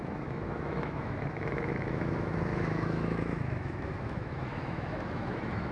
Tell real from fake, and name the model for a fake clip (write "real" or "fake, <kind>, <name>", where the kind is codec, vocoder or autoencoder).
fake, autoencoder, DAC-VAE